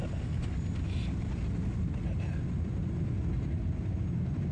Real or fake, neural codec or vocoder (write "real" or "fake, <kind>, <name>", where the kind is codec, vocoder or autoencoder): real